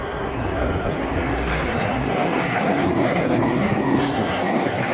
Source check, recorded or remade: remade